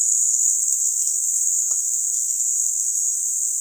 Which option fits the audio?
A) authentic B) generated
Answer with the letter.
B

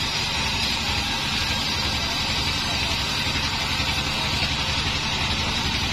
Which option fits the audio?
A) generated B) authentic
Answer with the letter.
A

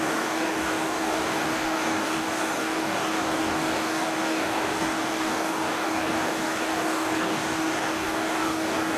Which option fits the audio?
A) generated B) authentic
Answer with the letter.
A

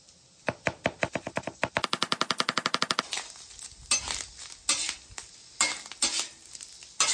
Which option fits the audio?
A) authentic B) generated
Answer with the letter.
A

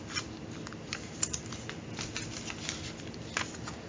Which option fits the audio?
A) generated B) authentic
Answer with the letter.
B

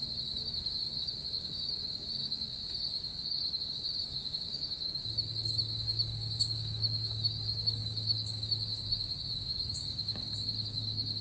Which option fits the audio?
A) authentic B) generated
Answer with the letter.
B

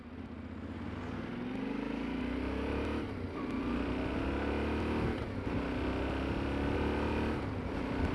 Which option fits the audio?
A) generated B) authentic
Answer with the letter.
B